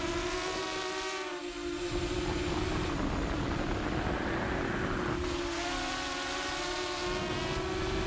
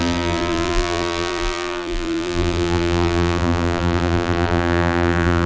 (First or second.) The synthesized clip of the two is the second